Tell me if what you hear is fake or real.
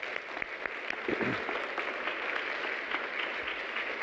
real